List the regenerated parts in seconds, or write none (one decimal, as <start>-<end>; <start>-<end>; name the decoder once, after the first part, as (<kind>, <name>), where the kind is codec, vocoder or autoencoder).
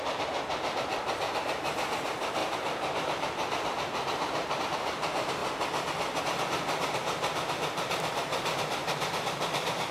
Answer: 0.0-5.4 (vocoder, BigVGAN v2); 6.2-8.8; 9.4-9.9